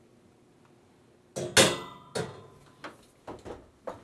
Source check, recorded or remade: recorded